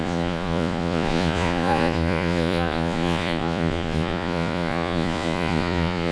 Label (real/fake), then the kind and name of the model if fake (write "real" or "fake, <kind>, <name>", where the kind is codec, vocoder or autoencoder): fake, vocoder, Vocos